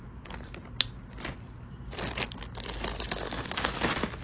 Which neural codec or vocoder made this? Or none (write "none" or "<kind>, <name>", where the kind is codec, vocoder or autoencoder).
none